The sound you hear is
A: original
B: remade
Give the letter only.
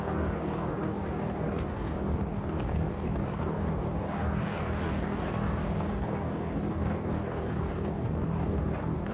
B